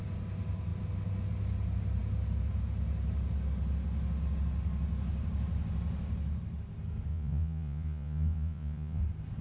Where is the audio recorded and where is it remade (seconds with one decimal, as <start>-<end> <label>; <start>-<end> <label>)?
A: 0.0-7.1 recorded; 7.1-9.0 remade; 9.0-9.4 recorded